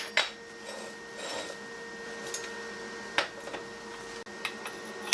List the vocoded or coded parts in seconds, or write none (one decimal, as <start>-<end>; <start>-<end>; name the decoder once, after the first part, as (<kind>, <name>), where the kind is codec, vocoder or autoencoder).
none